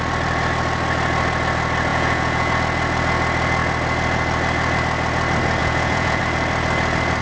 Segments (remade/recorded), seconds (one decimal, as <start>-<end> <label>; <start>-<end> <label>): 0.0-1.9 recorded; 1.9-2.5 remade; 2.5-5.6 recorded; 5.6-6.2 remade; 6.2-7.2 recorded